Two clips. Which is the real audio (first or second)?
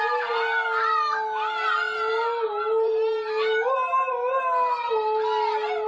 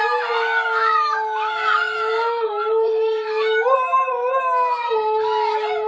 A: first